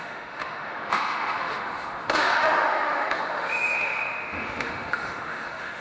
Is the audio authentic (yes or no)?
no